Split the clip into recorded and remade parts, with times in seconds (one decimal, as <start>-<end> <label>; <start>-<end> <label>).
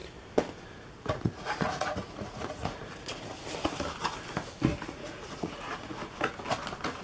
0.0-0.8 recorded; 0.8-3.3 remade; 3.3-4.8 recorded; 4.8-6.0 remade; 6.0-7.0 recorded